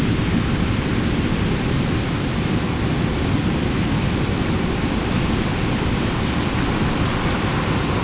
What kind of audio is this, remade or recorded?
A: recorded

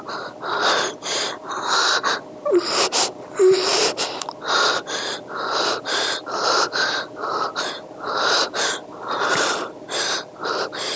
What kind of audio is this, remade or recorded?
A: remade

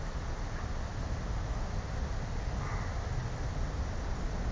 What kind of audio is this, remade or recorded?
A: recorded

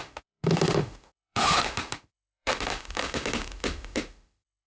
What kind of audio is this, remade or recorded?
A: remade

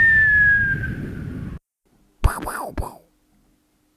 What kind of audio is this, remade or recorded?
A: recorded